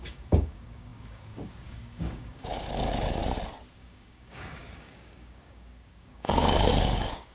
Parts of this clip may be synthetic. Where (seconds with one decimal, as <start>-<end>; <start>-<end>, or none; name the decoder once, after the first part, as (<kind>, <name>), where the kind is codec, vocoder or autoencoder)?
0.0-3.2 (codec, DAC); 3.7-7.3